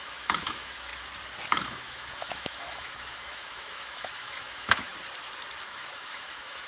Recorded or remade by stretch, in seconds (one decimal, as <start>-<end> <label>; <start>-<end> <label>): 0.0-0.9 remade; 0.9-1.5 recorded; 1.5-4.9 remade; 4.9-5.6 recorded; 5.6-6.7 remade